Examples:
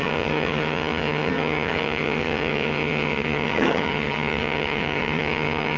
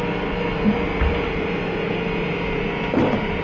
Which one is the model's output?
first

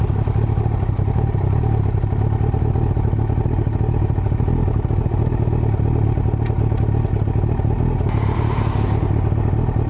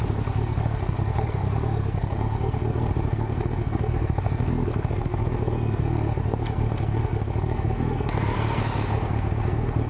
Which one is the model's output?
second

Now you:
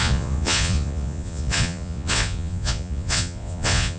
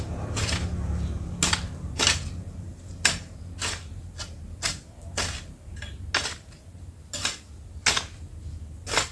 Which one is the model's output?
first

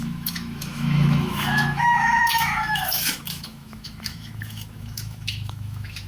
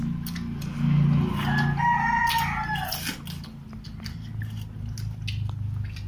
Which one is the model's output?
first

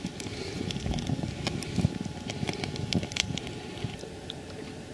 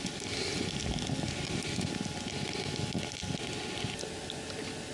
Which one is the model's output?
first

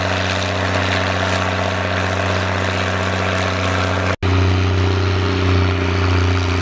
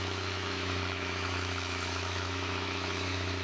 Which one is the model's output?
second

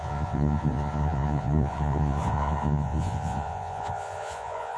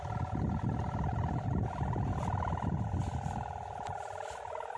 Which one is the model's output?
first